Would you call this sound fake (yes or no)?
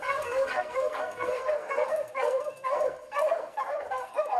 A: yes